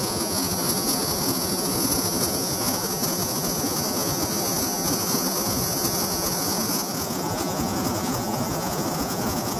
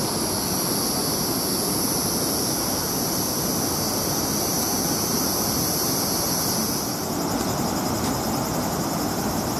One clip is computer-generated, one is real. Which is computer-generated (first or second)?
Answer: first